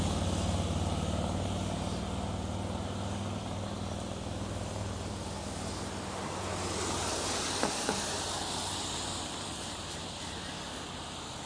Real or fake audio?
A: real